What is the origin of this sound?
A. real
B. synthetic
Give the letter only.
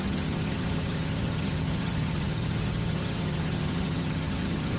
B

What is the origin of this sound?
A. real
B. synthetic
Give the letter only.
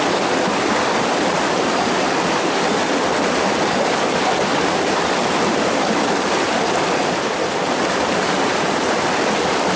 A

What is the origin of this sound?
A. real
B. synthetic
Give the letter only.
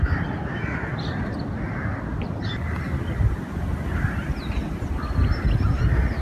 A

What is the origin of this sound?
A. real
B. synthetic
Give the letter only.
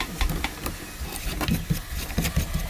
A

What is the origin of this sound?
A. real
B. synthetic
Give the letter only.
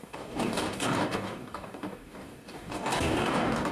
B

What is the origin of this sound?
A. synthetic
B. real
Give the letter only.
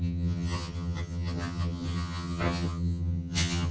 A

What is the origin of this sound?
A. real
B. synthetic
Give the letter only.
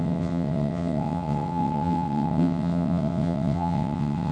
B